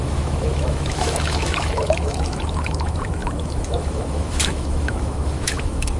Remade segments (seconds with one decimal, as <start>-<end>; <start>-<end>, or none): 0.0-6.0